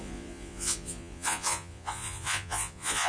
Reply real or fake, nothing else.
fake